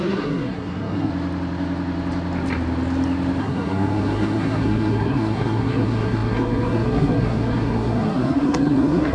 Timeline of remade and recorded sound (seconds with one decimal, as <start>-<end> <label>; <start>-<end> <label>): 0.0-1.1 remade; 1.1-3.4 recorded; 3.4-9.1 remade